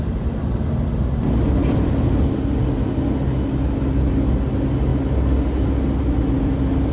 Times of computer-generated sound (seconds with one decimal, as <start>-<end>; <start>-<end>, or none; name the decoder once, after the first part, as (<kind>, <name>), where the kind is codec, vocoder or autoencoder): none